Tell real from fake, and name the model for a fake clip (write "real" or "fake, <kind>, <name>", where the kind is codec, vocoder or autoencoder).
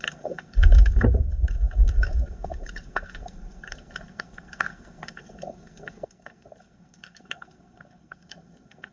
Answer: fake, codec, SNAC